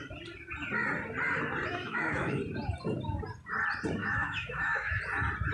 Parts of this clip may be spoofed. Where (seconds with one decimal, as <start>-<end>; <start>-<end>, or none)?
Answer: 1.7-2.4; 4.0-5.0